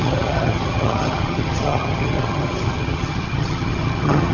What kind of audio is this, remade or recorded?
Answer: remade